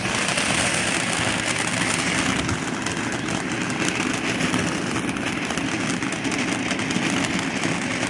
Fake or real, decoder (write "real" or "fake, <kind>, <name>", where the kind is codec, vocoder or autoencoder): real